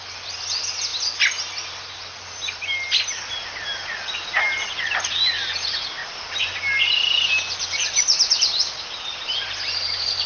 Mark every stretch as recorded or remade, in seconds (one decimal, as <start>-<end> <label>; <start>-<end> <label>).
0.0-10.3 recorded